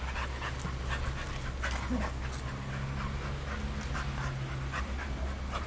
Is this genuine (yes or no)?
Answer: yes